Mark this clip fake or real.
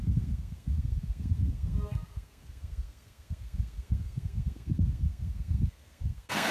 fake